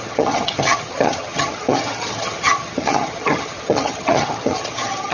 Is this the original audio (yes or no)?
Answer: no